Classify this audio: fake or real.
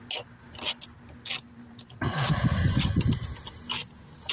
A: real